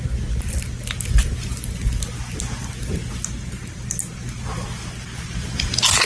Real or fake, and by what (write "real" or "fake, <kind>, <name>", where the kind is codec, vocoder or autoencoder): real